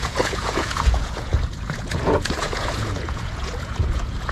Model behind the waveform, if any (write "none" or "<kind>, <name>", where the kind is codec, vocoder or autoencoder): vocoder, Vocos